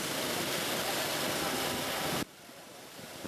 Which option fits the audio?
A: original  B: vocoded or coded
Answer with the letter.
A